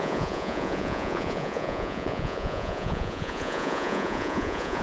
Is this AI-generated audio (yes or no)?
yes